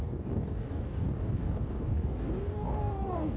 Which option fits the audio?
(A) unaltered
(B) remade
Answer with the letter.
B